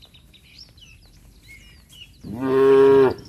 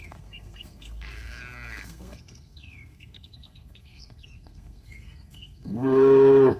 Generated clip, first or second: second